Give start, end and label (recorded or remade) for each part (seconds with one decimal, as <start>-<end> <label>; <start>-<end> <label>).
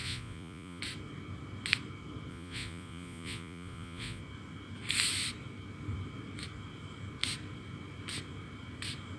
0.0-0.8 remade; 0.8-2.3 recorded; 2.3-4.2 remade; 4.2-9.2 recorded